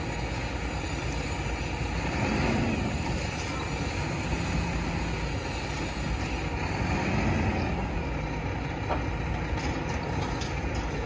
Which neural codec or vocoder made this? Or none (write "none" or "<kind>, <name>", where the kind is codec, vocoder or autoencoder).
none